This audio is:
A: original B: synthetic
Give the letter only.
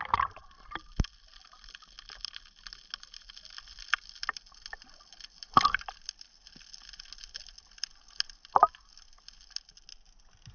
A